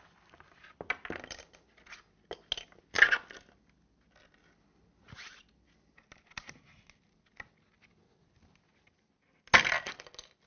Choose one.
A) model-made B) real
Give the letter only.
B